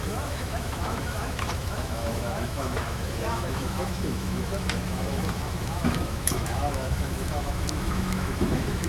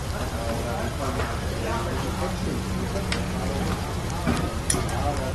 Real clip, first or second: second